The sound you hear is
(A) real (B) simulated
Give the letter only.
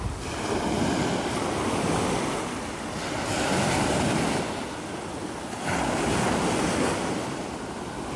A